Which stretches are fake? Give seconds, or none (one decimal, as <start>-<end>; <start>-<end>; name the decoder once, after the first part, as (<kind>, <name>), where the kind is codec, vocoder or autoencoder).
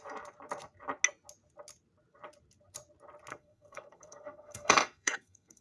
3.3-5.6 (codec, SNAC)